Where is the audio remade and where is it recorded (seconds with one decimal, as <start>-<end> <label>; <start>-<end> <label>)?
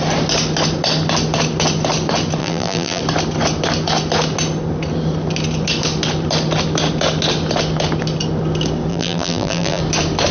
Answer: 0.0-2.4 recorded; 2.4-3.0 remade; 3.0-8.9 recorded; 8.9-9.8 remade; 9.8-10.3 recorded